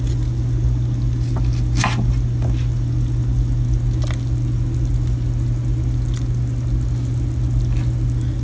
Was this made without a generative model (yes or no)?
yes